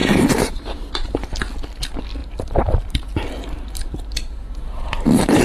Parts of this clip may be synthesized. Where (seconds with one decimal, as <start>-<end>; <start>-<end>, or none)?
0.0-0.9; 2.2-5.4